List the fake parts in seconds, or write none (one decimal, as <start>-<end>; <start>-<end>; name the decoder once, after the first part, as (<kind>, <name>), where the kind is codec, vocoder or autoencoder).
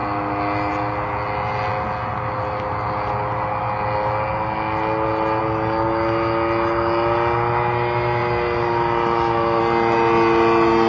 8.2-9.6 (vocoder, BigVGAN v2)